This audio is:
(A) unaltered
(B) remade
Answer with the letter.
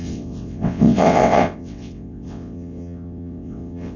B